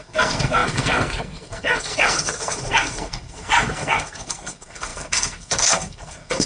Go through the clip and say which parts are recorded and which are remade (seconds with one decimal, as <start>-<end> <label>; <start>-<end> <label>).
0.0-6.5 remade